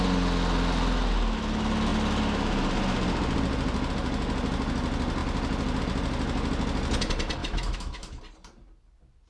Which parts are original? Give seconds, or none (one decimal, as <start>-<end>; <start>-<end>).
0.0-7.4; 8.2-9.3